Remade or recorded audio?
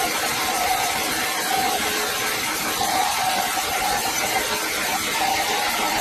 remade